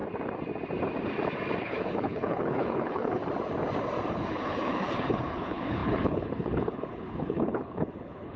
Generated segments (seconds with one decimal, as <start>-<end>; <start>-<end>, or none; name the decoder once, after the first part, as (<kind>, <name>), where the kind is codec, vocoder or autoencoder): 1.6-3.2 (codec, HILCodec); 4.1-8.4